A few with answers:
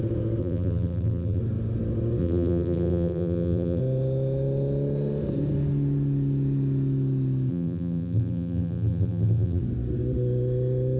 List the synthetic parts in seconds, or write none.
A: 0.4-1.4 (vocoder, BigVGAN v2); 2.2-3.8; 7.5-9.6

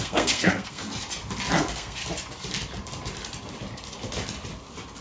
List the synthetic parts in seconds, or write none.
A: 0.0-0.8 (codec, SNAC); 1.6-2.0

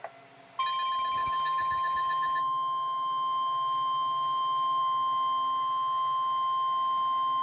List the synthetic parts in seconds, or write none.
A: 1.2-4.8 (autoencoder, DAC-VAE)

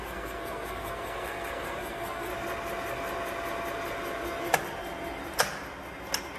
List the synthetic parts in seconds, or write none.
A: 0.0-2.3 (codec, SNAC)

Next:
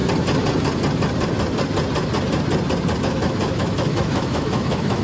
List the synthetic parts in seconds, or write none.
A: 3.0-5.0 (autoencoder, DAC-VAE)

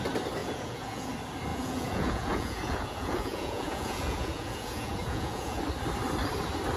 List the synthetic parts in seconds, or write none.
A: 0.4-1.1 (vocoder, Vocos); 1.5-5.6

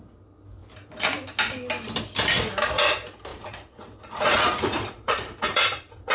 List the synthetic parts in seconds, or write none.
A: 3.3-6.1 (vocoder, Vocos)